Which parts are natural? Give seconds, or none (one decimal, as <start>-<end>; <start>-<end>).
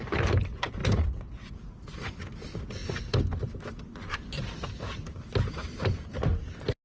0.0-0.8; 1.5-2.8; 4.3-6.8